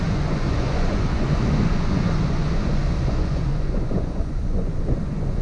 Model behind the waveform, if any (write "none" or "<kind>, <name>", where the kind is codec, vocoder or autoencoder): vocoder, Vocos